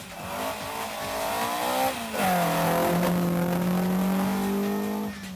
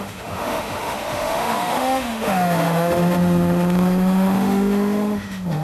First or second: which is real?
first